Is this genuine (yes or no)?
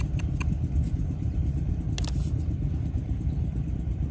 yes